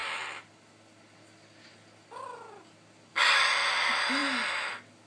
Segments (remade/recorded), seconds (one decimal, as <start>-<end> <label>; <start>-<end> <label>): 0.0-5.1 recorded